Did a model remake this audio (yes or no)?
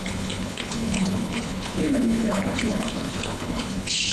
yes